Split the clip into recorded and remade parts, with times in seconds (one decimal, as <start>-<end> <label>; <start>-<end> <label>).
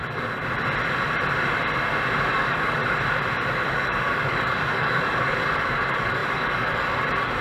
0.0-0.4 remade; 0.4-2.3 recorded; 2.3-2.8 remade; 2.8-3.7 recorded; 3.7-7.4 remade